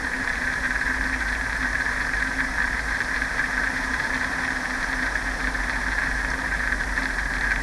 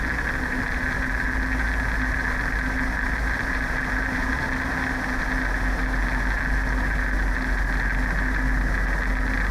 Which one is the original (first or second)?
second